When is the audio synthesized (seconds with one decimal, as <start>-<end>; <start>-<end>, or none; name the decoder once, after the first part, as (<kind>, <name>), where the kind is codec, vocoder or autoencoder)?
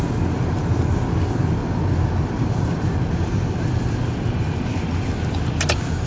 1.6-5.1 (vocoder, BigVGAN v2)